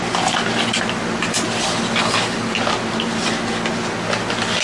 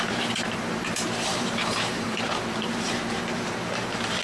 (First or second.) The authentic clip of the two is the first